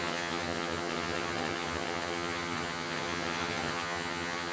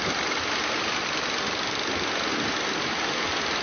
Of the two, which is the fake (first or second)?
first